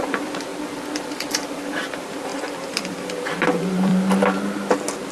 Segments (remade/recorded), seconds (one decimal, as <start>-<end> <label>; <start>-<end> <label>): 0.0-0.5 remade; 0.5-1.0 recorded; 1.0-3.9 remade; 3.9-5.1 recorded